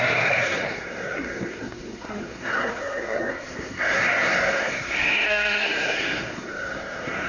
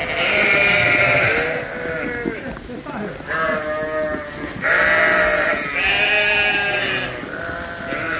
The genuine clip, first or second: second